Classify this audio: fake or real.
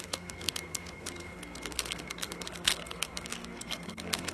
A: fake